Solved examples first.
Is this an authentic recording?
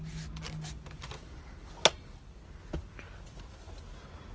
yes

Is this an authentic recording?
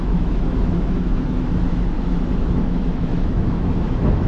no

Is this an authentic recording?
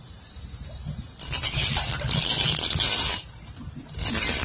yes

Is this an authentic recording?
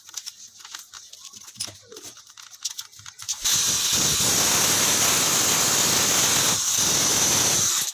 yes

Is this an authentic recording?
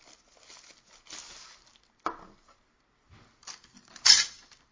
yes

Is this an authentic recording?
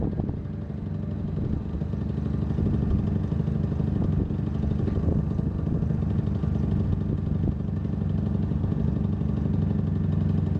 yes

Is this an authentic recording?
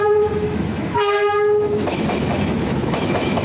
no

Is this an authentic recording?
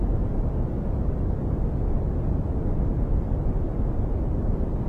yes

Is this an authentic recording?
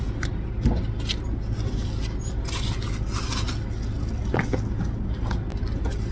yes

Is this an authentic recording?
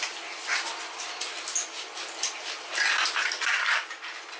yes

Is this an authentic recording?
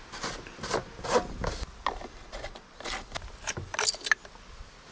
yes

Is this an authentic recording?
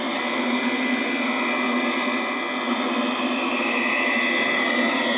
yes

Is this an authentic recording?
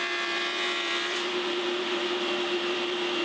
no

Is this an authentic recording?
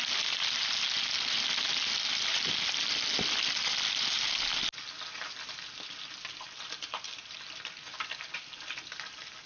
yes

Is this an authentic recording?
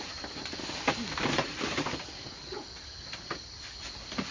no